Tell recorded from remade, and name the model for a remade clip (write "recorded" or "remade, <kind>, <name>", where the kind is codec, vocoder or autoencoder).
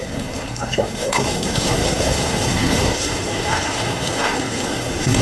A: remade, codec, SNAC